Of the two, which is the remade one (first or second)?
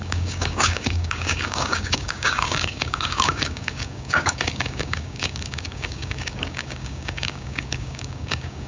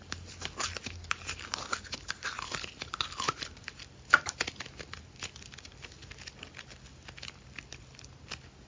first